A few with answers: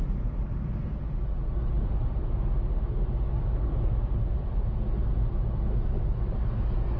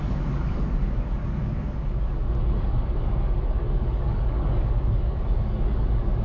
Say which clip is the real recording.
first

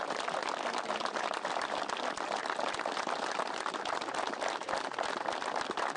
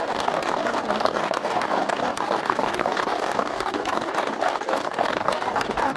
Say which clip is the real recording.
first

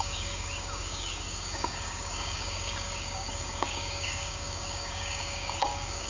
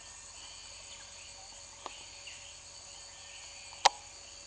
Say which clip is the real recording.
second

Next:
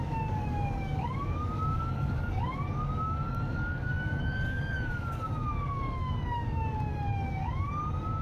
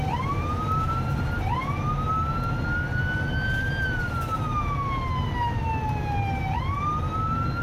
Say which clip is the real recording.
second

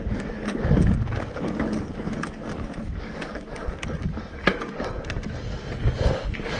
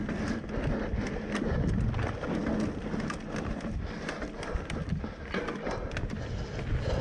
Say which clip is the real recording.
second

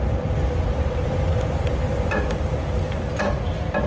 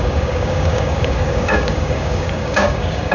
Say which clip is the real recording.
first